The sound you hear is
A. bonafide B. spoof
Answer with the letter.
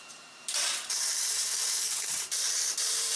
B